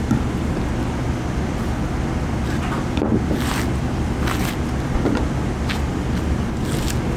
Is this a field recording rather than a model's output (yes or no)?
yes